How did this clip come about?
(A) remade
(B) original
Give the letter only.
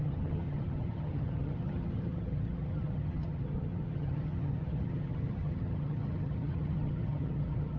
A